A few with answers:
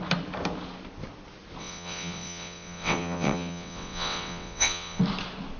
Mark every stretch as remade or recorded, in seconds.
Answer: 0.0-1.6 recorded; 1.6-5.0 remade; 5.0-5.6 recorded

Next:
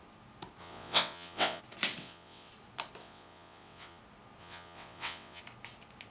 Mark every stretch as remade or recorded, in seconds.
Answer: 0.0-0.6 recorded; 0.6-1.6 remade; 1.6-2.0 recorded; 2.0-2.5 remade; 2.5-3.0 recorded; 3.0-4.0 remade; 4.0-4.4 recorded; 4.4-5.4 remade; 5.4-6.1 recorded

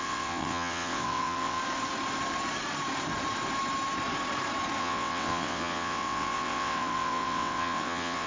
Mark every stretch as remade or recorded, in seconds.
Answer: 0.0-1.6 remade; 1.6-4.8 recorded; 4.8-8.3 remade

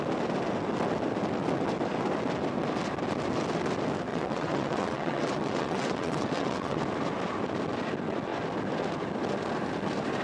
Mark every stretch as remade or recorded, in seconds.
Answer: 0.0-4.1 recorded; 4.1-6.8 remade; 6.8-10.2 recorded

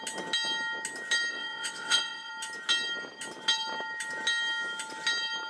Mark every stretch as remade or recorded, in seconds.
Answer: 0.0-1.3 recorded; 1.3-2.3 remade; 2.3-5.5 recorded

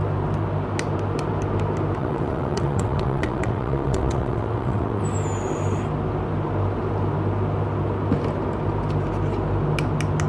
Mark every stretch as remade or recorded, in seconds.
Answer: 0.0-2.0 recorded; 2.0-5.0 remade; 5.0-10.3 recorded